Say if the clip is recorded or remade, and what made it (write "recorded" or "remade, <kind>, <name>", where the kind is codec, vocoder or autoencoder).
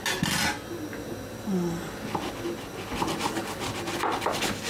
recorded